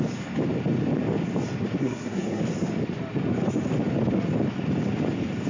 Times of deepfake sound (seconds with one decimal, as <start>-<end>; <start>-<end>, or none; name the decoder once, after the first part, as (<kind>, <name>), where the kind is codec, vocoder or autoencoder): 1.8-2.4 (codec, SNAC)